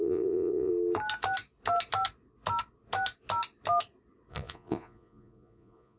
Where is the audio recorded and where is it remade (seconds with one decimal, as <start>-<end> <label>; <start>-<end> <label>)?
0.0-0.7 remade; 0.7-4.3 recorded; 4.3-6.0 remade